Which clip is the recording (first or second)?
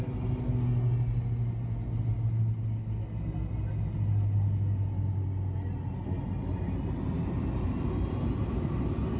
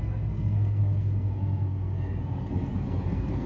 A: first